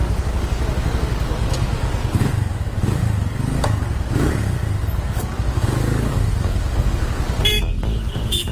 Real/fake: fake